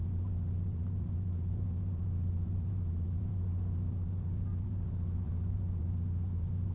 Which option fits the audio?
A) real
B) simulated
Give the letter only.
B